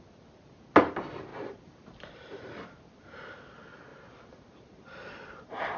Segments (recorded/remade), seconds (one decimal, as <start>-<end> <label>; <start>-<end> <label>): 0.0-1.3 recorded; 1.3-2.5 remade; 2.5-3.9 recorded; 3.9-5.8 remade